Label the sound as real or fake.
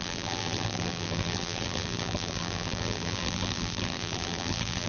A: fake